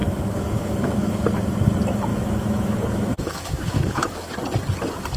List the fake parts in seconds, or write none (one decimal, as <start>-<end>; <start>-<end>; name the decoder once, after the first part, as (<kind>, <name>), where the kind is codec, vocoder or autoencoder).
0.0-1.1 (autoencoder, DAC-VAE); 2.1-4.3